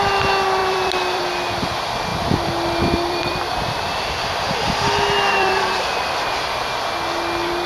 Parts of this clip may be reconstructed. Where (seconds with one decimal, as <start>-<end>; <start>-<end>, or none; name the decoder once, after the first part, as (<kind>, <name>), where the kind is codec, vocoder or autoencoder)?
0.6-1.2 (vocoder, BigVGAN v2); 2.1-6.7